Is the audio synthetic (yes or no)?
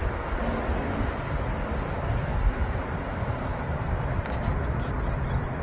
no